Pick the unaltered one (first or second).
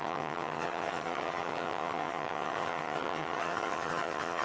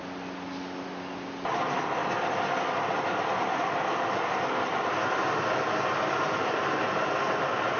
second